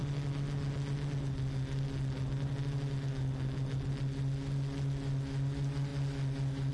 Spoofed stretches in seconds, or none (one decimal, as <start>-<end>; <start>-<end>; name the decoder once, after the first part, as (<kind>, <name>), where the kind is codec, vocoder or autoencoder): none